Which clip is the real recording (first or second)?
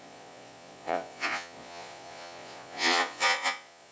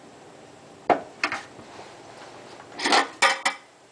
second